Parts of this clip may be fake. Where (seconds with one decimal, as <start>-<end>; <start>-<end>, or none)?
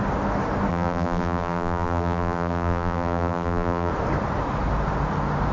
0.7-3.9